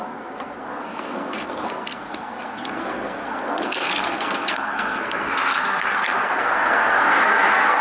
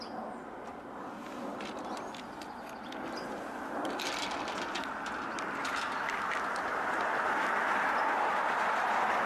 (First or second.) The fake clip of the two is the first